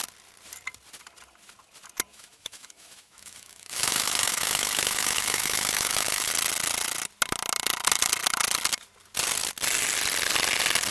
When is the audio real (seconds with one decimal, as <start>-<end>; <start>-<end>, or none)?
0.0-2.1; 6.3-10.9

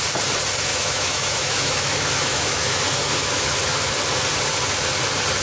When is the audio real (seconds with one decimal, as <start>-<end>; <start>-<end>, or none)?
0.0-0.7; 3.9-5.4

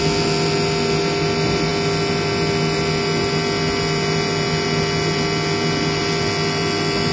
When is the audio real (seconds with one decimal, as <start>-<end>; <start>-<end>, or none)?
0.0-7.1

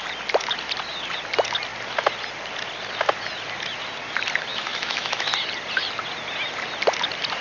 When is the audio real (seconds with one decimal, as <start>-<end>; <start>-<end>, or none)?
0.0-4.5; 5.3-7.4